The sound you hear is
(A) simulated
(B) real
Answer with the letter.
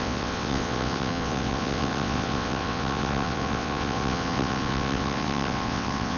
A